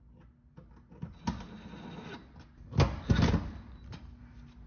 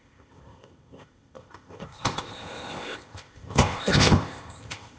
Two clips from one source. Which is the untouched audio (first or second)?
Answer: first